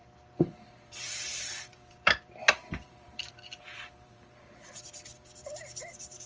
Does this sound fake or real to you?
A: fake